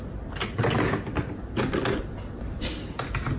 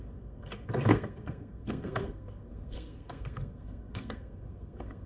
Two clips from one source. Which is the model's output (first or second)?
second